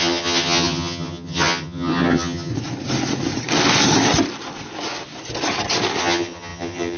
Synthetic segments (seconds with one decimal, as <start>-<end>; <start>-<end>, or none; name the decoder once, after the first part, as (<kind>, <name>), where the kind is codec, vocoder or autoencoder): 0.0-2.5 (vocoder, HiFi-GAN); 6.0-7.0